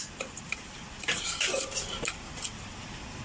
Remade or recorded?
recorded